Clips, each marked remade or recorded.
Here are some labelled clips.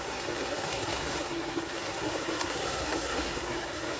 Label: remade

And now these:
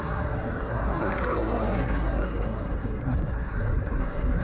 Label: remade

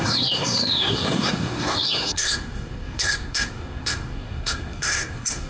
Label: remade